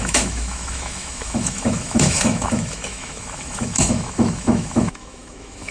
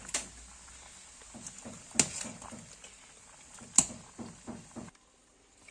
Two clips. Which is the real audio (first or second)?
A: second